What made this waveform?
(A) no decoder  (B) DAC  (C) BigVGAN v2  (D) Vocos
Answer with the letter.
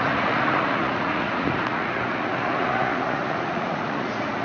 D